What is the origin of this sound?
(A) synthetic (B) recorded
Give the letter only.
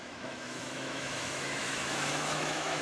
A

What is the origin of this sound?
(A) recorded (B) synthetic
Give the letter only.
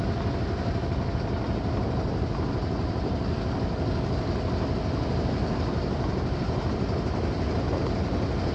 A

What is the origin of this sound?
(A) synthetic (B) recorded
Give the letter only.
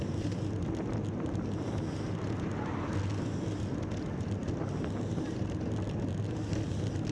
B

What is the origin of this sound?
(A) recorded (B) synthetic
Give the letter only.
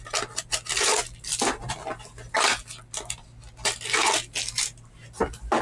A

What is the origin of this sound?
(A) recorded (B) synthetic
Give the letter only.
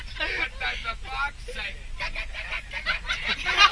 A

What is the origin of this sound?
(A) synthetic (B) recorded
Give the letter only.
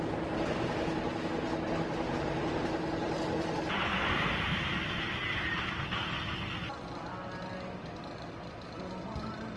B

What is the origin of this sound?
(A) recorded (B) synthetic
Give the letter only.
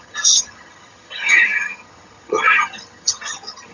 B